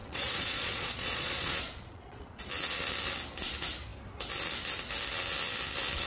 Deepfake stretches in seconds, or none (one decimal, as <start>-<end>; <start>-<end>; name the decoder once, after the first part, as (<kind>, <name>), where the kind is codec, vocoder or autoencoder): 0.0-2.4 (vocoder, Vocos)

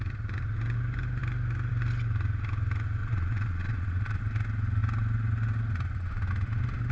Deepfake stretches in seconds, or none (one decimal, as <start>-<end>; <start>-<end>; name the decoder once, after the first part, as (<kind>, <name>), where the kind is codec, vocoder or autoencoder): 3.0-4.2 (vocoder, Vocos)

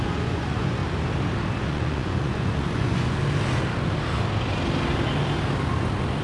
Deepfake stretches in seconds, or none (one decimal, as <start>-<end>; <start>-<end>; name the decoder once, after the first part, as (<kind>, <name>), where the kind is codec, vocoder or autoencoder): 0.0-0.8 (vocoder, Vocos); 1.6-3.2

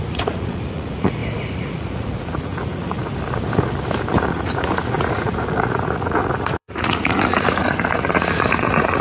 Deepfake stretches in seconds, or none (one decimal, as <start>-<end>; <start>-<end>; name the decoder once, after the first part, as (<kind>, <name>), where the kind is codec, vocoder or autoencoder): 0.0-3.1 (vocoder, Vocos); 4.1-9.0

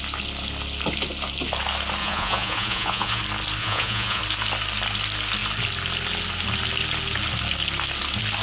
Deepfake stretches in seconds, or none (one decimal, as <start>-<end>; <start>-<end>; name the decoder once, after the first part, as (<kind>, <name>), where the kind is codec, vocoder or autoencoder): 2.0-3.2 (vocoder, Vocos); 3.6-4.2

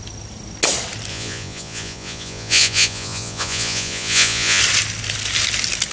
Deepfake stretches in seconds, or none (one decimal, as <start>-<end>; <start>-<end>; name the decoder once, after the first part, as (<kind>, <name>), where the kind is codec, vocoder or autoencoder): 1.1-4.6 (vocoder, Vocos)

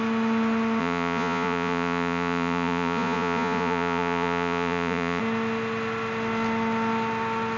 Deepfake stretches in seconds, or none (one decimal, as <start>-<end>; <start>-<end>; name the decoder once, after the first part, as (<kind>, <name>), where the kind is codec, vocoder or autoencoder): 0.8-5.2 (vocoder, Vocos)